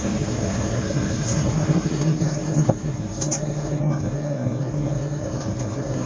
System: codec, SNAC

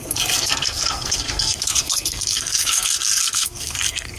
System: codec, SNAC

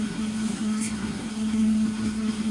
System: codec, SNAC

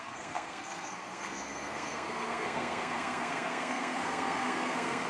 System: codec, SNAC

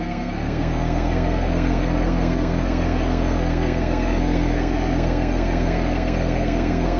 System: codec, SNAC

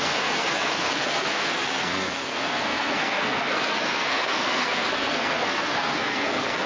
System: codec, SNAC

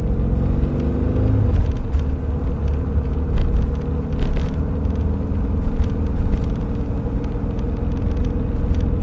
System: none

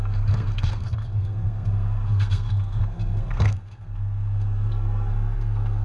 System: codec, SNAC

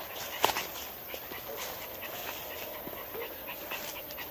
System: none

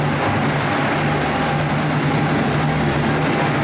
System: none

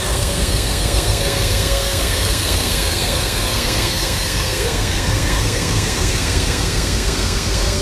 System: codec, SNAC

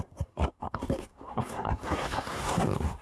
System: codec, SNAC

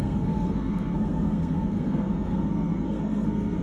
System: codec, SNAC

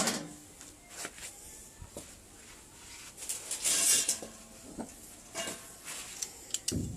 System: none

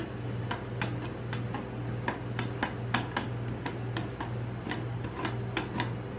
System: none